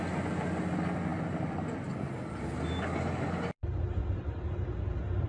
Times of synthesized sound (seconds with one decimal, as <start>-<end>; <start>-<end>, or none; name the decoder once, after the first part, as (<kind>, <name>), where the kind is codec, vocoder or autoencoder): none